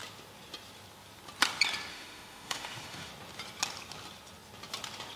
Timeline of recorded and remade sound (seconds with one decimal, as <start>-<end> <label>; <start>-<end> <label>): 0.0-1.9 recorded; 1.9-3.1 remade; 3.1-5.2 recorded